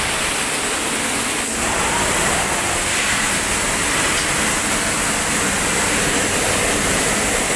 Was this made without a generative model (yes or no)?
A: yes